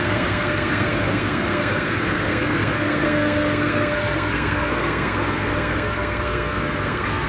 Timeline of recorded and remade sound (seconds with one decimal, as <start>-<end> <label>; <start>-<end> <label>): 0.0-7.3 remade